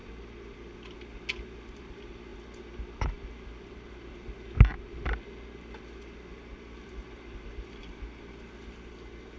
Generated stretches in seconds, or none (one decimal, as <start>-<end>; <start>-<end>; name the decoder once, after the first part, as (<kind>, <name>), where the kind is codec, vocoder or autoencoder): none